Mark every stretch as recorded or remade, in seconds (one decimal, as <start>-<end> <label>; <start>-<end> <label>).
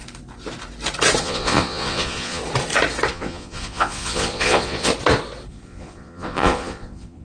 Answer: 0.0-1.2 recorded; 1.2-2.4 remade; 2.4-3.1 recorded; 3.1-4.9 remade; 4.9-5.5 recorded; 5.5-7.2 remade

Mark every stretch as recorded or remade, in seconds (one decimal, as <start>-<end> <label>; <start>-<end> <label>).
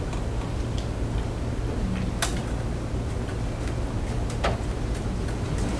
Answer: 0.0-5.8 recorded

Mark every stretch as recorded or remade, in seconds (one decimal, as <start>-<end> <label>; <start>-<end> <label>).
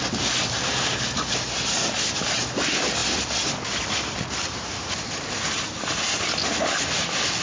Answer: 0.0-7.4 recorded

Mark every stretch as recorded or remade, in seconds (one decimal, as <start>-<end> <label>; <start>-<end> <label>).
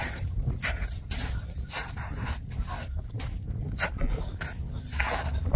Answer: 0.0-5.6 recorded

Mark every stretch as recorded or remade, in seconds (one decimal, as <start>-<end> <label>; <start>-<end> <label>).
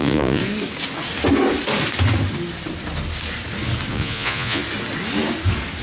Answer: 0.0-0.4 remade; 0.4-3.9 recorded; 3.9-4.6 remade; 4.6-5.8 recorded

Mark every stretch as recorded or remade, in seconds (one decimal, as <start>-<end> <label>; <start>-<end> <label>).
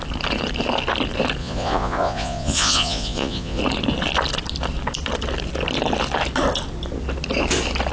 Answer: 0.0-1.4 recorded; 1.4-3.6 remade; 3.6-7.9 recorded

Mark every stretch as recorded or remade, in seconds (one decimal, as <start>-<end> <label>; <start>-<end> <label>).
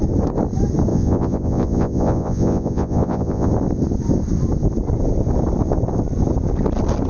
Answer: 0.0-0.9 recorded; 0.9-3.5 remade; 3.5-7.1 recorded